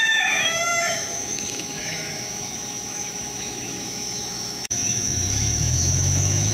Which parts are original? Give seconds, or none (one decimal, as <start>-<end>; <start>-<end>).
none